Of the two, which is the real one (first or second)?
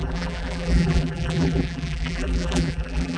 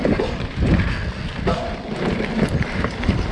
second